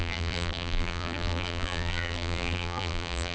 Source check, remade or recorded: remade